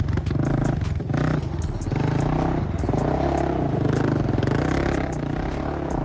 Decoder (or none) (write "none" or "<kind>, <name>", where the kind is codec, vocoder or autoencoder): none